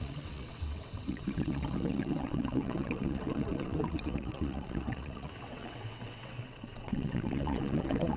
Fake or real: fake